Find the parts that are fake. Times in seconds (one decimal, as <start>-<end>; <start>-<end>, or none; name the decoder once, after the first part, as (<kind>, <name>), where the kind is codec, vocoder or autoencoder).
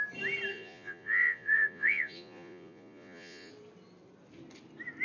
0.5-3.5 (vocoder, Vocos)